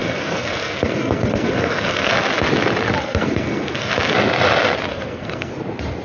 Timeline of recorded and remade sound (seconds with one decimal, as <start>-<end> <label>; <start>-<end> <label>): 0.0-2.1 remade; 2.1-3.0 recorded; 3.0-3.9 remade; 3.9-4.9 recorded; 4.9-5.5 remade; 5.5-6.0 recorded